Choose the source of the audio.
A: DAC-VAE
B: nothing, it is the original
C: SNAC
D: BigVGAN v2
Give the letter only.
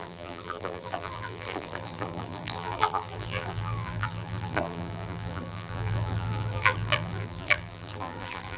D